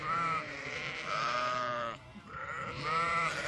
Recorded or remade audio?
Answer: remade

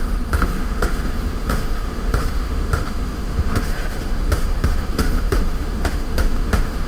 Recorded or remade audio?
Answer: remade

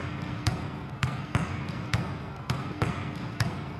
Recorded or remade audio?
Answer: remade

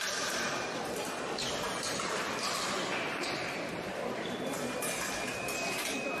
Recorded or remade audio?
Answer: remade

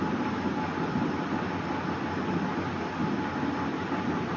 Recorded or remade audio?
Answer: recorded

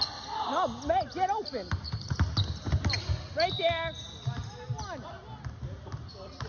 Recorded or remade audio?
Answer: recorded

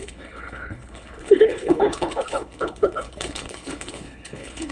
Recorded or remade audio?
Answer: remade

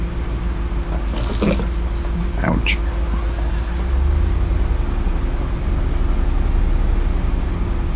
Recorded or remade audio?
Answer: recorded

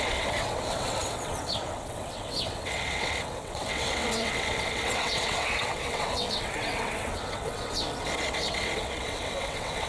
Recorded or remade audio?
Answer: remade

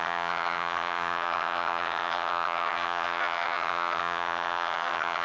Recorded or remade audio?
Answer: remade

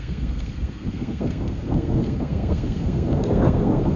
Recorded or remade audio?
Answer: remade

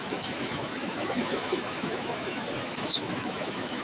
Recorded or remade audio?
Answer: remade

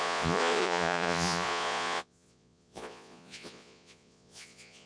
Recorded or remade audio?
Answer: remade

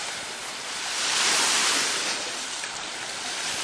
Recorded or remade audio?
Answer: remade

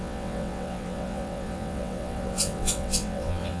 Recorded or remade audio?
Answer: remade